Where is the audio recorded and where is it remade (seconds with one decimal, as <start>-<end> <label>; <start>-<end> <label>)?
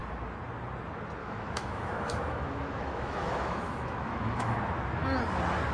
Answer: 0.0-1.2 recorded; 1.2-4.6 remade; 4.6-5.7 recorded